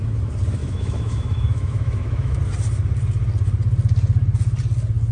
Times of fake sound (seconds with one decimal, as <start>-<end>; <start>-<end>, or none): 0.6-2.4